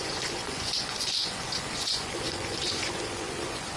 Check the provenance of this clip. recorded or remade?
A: remade